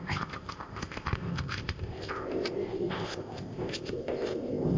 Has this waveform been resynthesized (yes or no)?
yes